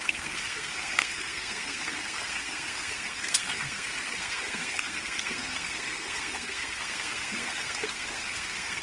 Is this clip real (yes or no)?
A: no